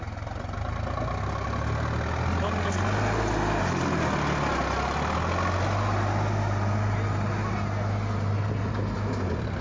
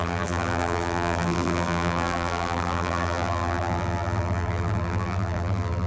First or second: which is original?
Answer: first